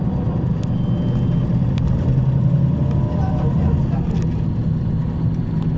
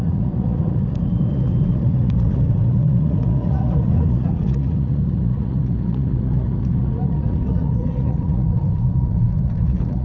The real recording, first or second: first